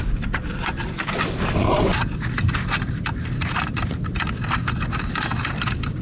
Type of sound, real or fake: real